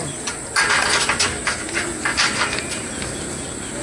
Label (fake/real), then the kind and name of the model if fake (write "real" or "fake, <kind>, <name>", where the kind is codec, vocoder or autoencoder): real